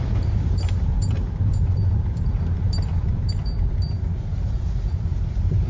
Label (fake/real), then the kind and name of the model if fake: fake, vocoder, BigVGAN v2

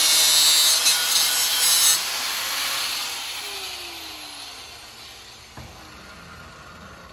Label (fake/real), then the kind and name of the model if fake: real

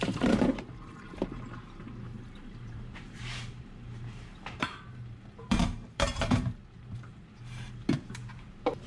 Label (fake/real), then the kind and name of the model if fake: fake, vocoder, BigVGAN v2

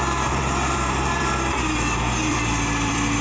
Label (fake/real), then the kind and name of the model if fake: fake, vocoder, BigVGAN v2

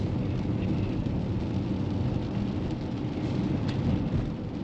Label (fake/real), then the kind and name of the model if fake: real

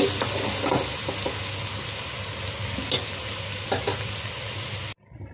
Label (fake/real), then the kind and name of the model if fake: real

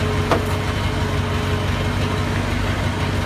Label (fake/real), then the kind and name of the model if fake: real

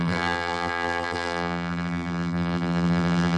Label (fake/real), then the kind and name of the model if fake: fake, vocoder, BigVGAN v2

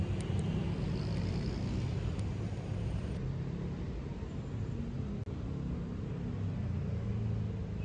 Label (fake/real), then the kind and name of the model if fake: real